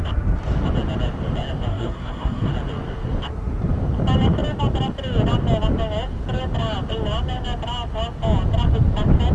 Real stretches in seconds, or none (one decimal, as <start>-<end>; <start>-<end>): 0.0-1.7; 2.5-9.3